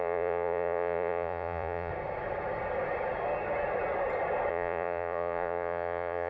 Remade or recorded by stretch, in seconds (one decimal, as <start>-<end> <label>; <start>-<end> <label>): 0.0-1.9 remade; 1.9-4.5 recorded; 4.5-6.3 remade

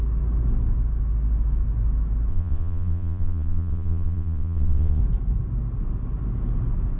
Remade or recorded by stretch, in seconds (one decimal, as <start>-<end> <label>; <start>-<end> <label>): 0.0-2.3 recorded; 2.3-5.0 remade; 5.0-7.0 recorded

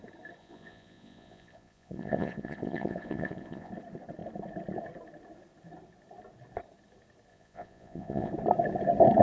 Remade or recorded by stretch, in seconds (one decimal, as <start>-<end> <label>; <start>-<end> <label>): 0.0-0.4 recorded; 0.4-3.7 remade; 3.7-7.3 recorded; 7.3-8.3 remade; 8.3-9.2 recorded

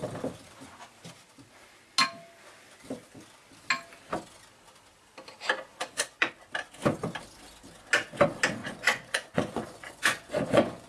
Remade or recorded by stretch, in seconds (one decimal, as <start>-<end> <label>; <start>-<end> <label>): 0.0-5.7 recorded; 5.7-6.3 remade; 6.3-8.6 recorded; 8.6-10.9 remade

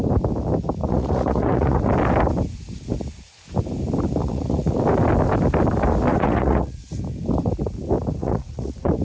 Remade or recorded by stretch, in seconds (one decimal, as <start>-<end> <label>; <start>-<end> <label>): 0.0-0.8 recorded; 0.8-1.9 remade; 1.9-4.2 recorded; 4.2-4.8 remade; 4.8-6.1 recorded; 6.1-6.9 remade; 6.9-8.2 recorded; 8.2-9.0 remade